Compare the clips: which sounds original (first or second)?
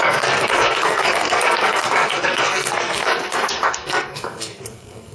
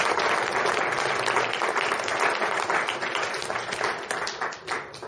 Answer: second